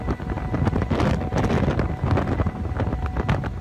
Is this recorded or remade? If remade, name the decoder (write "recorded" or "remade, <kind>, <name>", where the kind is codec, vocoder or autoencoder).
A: recorded